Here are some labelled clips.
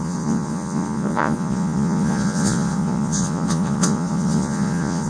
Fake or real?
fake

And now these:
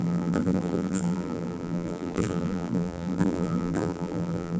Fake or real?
fake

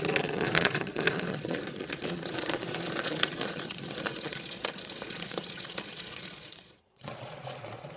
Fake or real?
fake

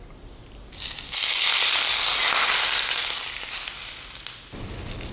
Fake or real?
real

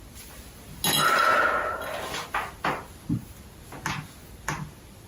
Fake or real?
real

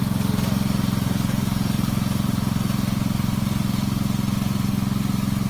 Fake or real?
real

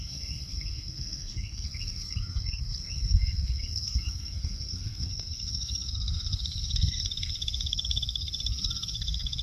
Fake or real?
fake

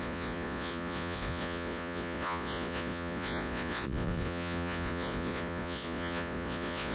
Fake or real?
fake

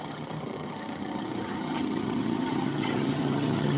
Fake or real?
fake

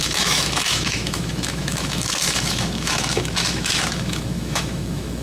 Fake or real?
fake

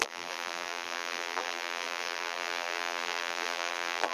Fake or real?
fake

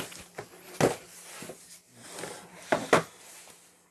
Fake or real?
real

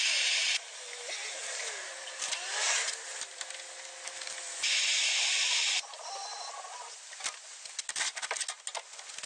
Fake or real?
real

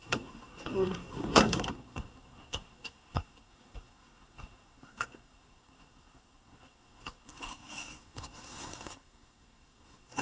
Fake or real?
fake